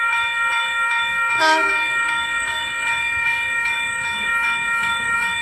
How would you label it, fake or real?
fake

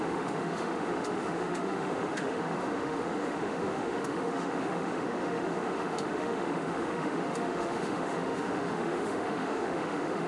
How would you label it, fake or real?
fake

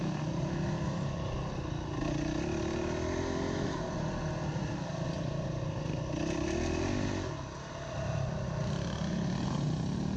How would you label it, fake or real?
real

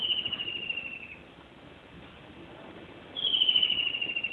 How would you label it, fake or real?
real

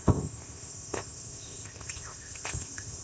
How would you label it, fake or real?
fake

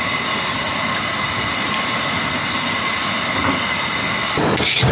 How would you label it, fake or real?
real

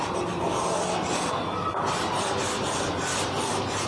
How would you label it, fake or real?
real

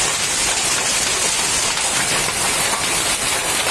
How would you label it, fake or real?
real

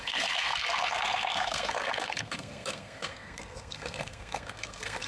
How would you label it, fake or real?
fake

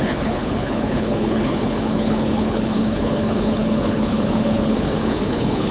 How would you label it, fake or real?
fake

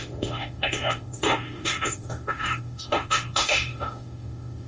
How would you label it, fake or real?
fake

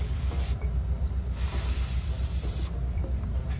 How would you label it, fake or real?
fake